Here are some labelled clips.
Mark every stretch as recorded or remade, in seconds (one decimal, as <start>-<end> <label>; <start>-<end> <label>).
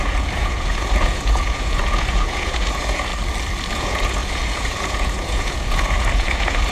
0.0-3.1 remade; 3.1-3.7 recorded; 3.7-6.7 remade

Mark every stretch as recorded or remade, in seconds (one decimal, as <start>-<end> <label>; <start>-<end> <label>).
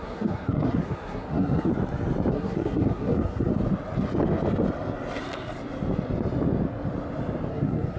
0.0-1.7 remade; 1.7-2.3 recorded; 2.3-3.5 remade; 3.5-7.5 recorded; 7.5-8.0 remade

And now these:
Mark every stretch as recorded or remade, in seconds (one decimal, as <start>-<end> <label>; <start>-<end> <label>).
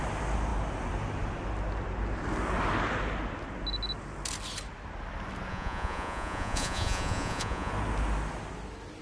0.0-5.5 recorded; 5.5-7.7 remade; 7.7-9.0 recorded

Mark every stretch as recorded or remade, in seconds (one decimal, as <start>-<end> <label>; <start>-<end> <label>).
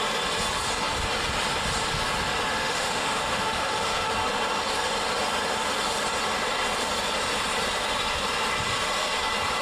0.0-2.6 recorded; 2.6-4.1 remade; 4.1-9.6 recorded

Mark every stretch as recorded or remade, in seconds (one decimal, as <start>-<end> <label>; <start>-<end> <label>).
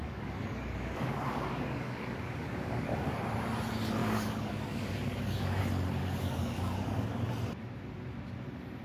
0.0-3.2 remade; 3.2-4.0 recorded; 4.0-5.6 remade; 5.6-6.0 recorded; 6.0-7.3 remade; 7.3-8.8 recorded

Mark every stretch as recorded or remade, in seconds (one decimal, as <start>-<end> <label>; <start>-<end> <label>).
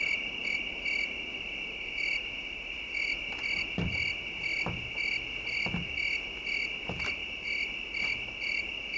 0.0-9.0 recorded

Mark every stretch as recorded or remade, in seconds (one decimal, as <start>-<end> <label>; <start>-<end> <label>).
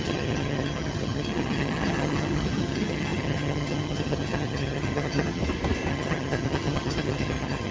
0.0-5.4 remade; 5.4-5.9 recorded; 5.9-7.7 remade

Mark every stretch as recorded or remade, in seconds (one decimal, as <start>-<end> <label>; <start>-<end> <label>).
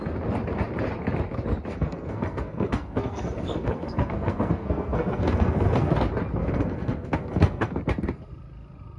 0.0-1.7 recorded; 1.7-5.9 remade; 5.9-6.4 recorded; 6.4-7.8 remade; 7.8-9.0 recorded